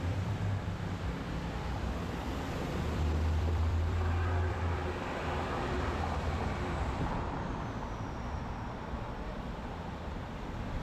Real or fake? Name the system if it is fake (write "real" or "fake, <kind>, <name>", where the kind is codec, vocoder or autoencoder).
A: fake, vocoder, BigVGAN v2